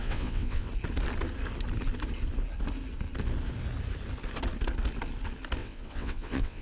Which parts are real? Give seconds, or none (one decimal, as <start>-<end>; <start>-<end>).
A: 0.7-5.6